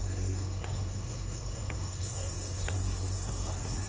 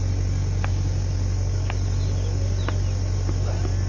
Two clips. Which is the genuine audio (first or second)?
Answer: second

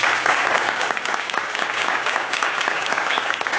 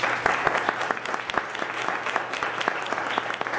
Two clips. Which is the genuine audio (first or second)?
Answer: second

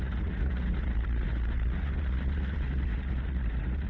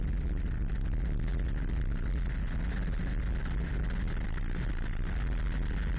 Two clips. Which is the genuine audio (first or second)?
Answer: second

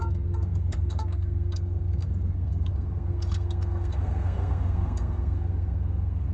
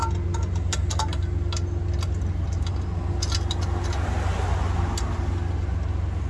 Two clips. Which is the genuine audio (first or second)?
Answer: second